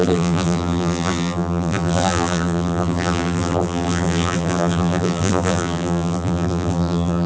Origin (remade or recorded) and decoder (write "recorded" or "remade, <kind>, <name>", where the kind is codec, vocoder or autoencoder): remade, vocoder, BigVGAN v2